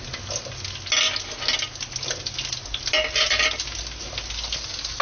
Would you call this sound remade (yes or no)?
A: no